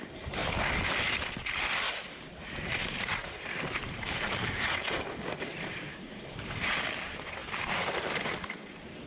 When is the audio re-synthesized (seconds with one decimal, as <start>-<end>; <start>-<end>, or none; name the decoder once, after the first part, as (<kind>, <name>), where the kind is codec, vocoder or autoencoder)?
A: 0.0-0.4 (vocoder, BigVGAN v2); 2.5-4.8; 5.5-7.4; 8.7-9.1